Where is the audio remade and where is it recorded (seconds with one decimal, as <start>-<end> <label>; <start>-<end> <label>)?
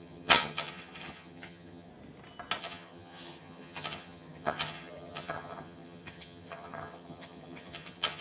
0.0-1.9 remade; 1.9-2.6 recorded; 2.6-8.2 remade